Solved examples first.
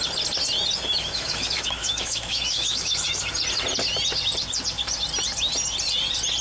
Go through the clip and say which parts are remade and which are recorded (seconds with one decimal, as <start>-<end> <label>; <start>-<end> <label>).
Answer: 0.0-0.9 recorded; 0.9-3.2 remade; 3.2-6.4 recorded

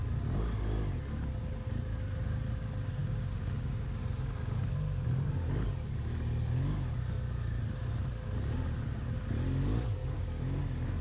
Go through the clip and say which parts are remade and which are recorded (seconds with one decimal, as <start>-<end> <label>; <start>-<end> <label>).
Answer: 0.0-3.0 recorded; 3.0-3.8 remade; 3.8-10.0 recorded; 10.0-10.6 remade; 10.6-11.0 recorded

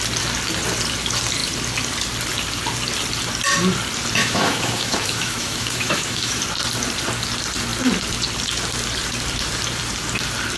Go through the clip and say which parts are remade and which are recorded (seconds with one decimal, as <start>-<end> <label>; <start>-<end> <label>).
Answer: 0.0-4.2 recorded; 4.2-6.4 remade; 6.4-10.6 recorded

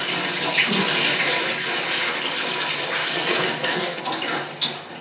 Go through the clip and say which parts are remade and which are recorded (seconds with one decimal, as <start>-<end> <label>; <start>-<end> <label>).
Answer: 0.0-3.0 recorded; 3.0-4.0 remade; 4.0-5.0 recorded

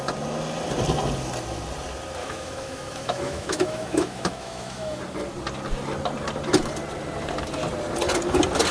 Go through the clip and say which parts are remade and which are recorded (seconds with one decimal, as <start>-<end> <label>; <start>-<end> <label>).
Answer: 0.0-2.2 recorded; 2.2-5.0 remade; 5.0-8.7 recorded

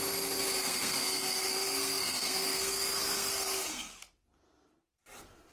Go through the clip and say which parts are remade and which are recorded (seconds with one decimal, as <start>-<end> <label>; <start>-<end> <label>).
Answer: 0.0-0.6 recorded; 0.6-3.9 remade; 3.9-5.5 recorded

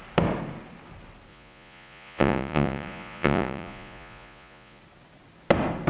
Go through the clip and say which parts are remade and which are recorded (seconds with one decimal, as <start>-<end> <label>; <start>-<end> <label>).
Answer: 0.0-1.3 recorded; 1.3-4.8 remade; 4.8-5.9 recorded

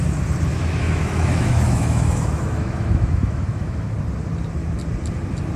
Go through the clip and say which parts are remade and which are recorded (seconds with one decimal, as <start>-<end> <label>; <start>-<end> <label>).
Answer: 0.0-0.5 recorded; 0.5-3.9 remade; 3.9-5.6 recorded